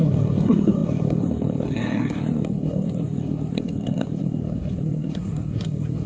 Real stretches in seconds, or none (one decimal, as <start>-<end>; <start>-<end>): none